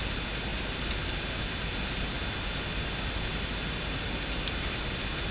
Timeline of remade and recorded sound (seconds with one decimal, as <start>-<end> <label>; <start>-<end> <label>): 0.0-5.3 recorded